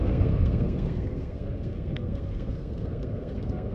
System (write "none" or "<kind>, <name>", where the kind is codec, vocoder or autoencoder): codec, SNAC